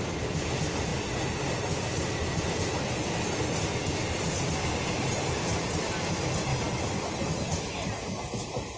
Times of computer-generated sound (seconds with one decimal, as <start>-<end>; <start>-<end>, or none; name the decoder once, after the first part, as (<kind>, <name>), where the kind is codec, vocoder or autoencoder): 5.5-6.1 (vocoder, BigVGAN v2); 6.5-7.3